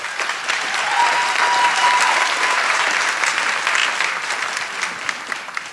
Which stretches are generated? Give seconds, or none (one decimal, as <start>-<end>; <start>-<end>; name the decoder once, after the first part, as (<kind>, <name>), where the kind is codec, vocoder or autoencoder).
0.0-3.4 (vocoder, BigVGAN v2)